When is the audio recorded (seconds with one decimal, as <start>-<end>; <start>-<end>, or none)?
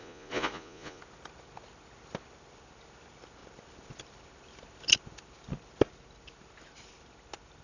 1.0-7.6